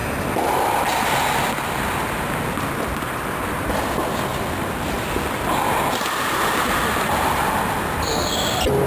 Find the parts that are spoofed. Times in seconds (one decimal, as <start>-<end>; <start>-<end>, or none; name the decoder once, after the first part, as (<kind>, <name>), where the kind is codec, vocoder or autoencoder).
0.0-1.0 (vocoder, BigVGAN v2); 4.3-8.4

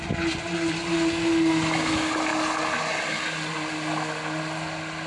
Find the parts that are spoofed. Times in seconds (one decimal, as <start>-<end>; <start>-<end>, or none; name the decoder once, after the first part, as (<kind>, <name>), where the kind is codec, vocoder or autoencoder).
none

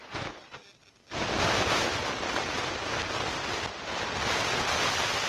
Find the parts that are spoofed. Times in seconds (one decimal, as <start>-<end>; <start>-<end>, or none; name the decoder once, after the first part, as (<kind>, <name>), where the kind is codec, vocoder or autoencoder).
0.0-0.6 (vocoder, BigVGAN v2); 1.4-2.0

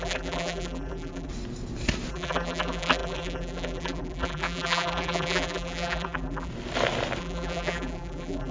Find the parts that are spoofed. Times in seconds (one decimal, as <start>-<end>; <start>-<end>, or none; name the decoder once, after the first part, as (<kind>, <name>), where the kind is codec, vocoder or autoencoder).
0.0-1.3 (vocoder, BigVGAN v2); 2.1-6.5; 7.2-8.5

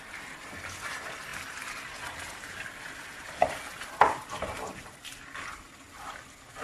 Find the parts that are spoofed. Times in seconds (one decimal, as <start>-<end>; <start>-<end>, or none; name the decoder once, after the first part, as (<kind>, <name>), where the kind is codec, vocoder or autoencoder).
none

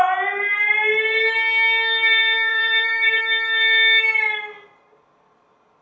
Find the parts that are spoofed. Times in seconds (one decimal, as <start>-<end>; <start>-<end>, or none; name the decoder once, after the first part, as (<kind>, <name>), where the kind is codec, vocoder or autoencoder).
2.5-3.2 (vocoder, BigVGAN v2)

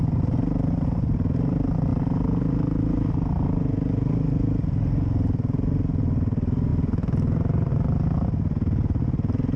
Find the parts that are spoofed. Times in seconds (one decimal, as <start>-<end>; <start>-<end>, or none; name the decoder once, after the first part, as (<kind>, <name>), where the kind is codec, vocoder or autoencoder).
6.7-7.7 (vocoder, BigVGAN v2)

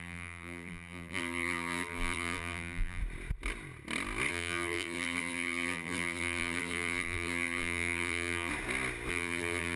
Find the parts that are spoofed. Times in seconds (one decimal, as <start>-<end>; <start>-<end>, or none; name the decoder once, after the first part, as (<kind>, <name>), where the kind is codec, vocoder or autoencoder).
0.0-3.0 (vocoder, BigVGAN v2); 4.3-8.5; 9.1-9.8